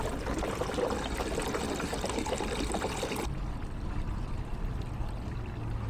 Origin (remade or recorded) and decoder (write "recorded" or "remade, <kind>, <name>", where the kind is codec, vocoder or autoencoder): recorded